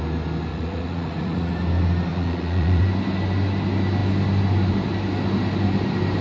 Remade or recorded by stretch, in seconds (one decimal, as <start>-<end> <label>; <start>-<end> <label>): 0.0-0.5 recorded; 0.5-1.5 remade; 1.5-2.1 recorded; 2.1-2.8 remade; 2.8-6.2 recorded